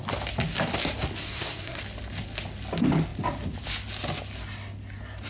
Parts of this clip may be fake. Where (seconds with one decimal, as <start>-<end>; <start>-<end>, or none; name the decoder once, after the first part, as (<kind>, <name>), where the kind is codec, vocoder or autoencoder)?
1.2-1.8 (codec, SNAC)